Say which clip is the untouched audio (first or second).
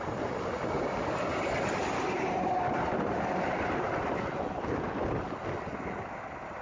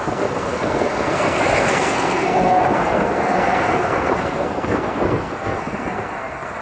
first